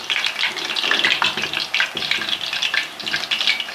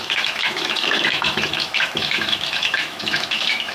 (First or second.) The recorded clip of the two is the first